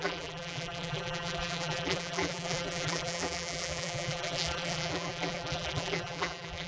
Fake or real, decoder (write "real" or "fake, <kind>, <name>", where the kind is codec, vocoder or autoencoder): fake, vocoder, BigVGAN v2